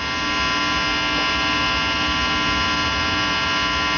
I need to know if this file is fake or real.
real